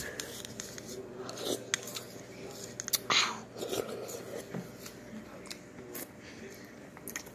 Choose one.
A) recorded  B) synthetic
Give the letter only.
A